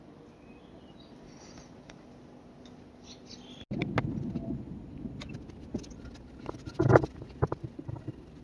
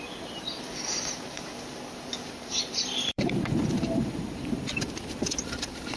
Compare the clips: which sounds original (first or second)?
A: first